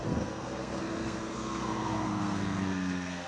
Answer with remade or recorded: remade